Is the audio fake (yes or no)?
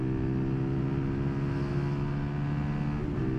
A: no